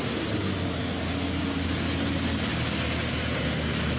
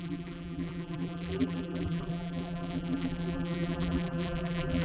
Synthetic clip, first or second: second